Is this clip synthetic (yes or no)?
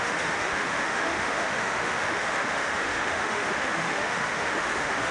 yes